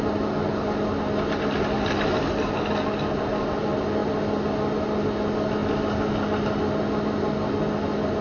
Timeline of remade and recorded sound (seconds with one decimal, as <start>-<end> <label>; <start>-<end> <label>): 0.0-8.2 recorded